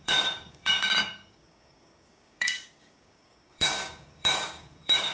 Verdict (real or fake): fake